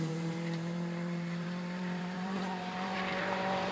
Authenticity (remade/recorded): remade